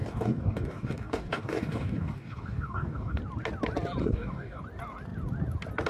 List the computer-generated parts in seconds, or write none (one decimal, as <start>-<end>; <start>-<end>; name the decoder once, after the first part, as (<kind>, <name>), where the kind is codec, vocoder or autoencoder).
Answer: 0.0-3.2 (codec, DAC); 4.0-4.6